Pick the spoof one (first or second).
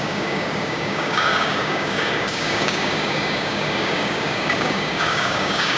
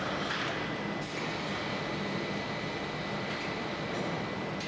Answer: first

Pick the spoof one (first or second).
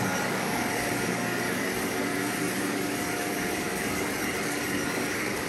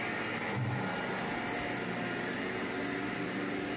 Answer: first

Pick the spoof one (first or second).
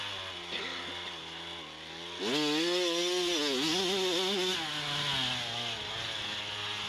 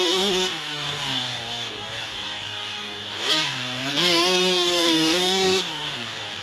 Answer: second